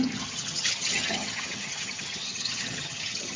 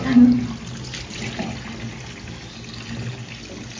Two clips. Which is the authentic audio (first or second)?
second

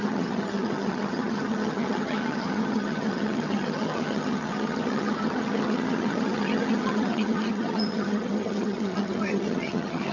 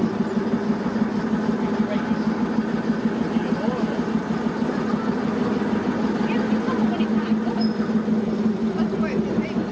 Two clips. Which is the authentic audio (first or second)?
second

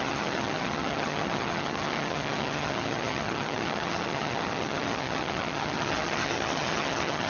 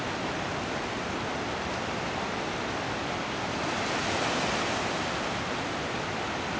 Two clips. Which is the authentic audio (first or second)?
second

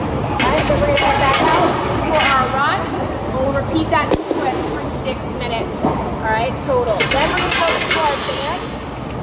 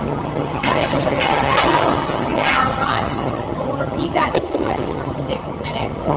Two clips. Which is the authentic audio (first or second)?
first